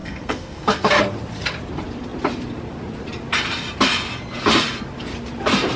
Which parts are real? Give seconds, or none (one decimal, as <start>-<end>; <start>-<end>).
1.0-5.8